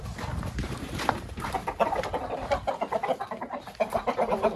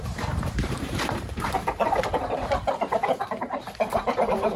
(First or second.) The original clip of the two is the first